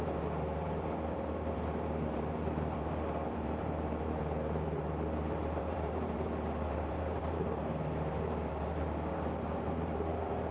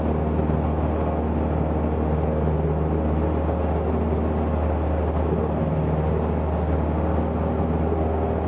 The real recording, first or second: second